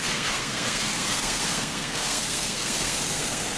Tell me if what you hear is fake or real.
fake